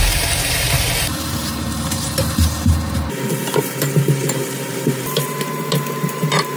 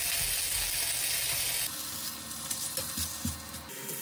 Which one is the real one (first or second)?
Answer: second